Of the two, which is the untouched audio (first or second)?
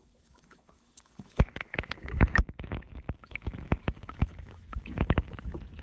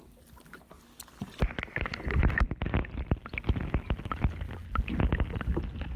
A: second